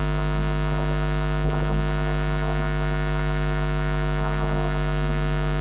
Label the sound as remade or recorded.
recorded